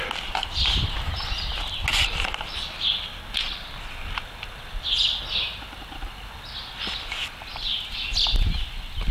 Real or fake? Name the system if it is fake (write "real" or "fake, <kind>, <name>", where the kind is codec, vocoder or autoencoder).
real